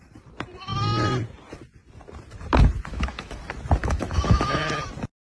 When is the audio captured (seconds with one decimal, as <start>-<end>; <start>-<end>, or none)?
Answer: 0.0-2.9; 3.4-3.8; 4.6-5.2